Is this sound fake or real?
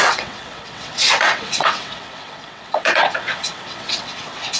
fake